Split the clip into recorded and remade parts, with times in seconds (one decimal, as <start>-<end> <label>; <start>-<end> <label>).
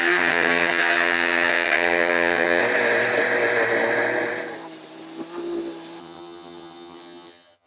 0.0-2.6 remade; 2.6-6.0 recorded; 6.0-7.7 remade